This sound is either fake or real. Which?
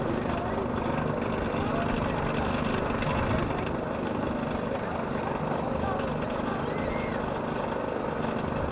real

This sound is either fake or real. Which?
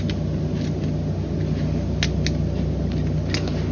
real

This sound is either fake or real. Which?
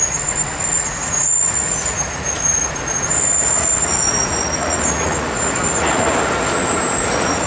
fake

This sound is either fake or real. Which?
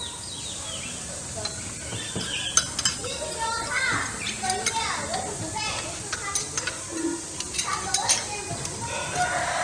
real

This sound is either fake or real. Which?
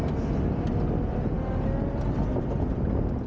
real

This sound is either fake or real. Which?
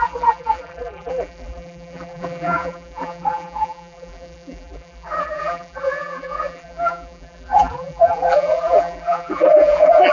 fake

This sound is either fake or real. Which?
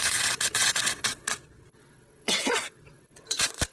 fake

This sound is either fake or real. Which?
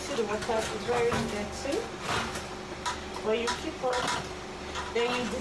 real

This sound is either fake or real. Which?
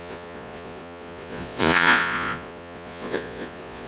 fake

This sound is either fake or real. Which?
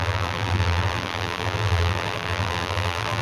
fake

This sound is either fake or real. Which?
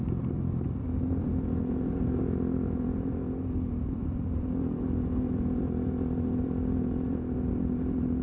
fake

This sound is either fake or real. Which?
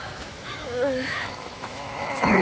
fake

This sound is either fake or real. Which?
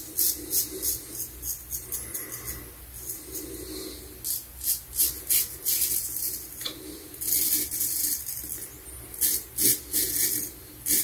real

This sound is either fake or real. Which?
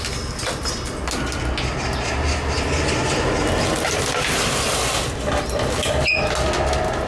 real